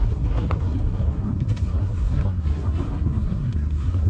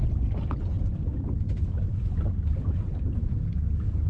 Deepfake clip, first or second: first